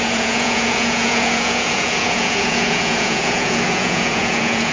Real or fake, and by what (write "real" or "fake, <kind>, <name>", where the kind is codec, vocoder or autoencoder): fake, vocoder, Vocos